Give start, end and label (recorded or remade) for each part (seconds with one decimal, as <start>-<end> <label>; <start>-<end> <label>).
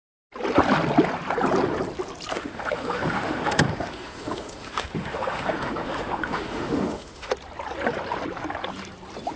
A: 0.0-2.3 recorded; 2.3-7.3 remade; 7.3-9.4 recorded